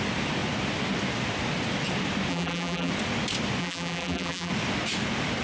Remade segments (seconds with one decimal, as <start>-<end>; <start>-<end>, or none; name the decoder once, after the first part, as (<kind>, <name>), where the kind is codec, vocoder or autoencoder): 2.3-2.9 (vocoder, BigVGAN v2); 3.6-4.5